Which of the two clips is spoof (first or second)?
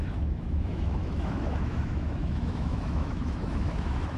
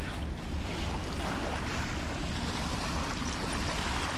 first